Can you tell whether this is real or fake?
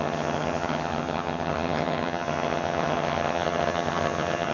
fake